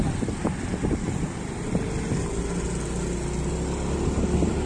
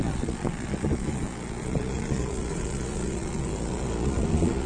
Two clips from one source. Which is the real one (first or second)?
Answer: first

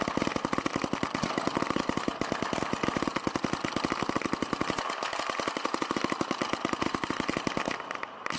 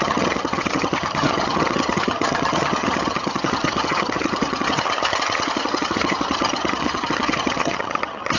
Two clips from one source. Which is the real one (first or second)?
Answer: first